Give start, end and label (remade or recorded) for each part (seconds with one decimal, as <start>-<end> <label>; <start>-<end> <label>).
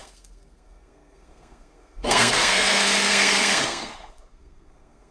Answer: 0.0-5.1 remade